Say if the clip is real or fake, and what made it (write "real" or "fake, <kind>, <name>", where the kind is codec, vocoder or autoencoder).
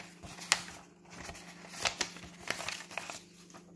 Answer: real